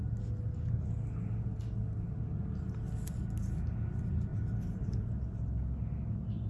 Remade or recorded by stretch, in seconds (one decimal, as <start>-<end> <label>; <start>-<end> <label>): 0.0-4.3 recorded; 4.3-5.0 remade; 5.0-6.5 recorded